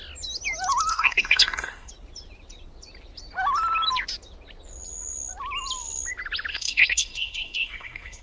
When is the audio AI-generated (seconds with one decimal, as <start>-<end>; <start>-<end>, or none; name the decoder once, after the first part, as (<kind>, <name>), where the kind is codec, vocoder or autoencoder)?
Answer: 0.9-1.9 (codec, SNAC); 6.5-8.2